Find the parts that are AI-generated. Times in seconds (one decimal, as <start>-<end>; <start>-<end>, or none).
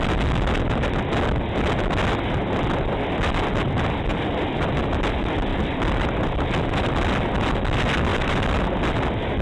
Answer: 4.1-4.8; 5.5-6.5; 8.1-8.6